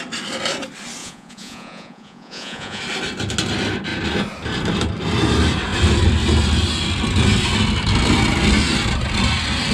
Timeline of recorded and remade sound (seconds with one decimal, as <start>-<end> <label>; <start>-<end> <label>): 0.0-1.0 recorded; 1.0-2.8 remade; 2.8-9.7 recorded